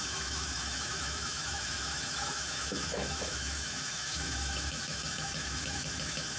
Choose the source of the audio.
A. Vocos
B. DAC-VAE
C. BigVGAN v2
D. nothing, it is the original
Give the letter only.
B